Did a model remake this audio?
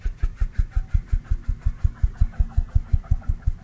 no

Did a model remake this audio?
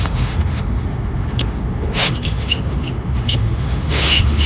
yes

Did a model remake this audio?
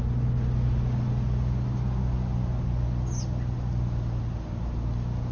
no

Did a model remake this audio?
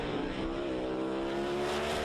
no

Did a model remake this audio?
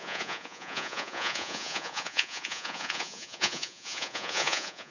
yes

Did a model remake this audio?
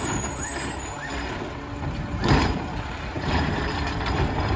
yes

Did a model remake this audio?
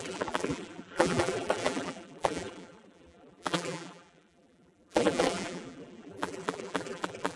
yes